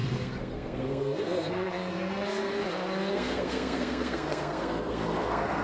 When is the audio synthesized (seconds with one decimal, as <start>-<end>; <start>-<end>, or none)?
0.0-2.6; 3.1-5.6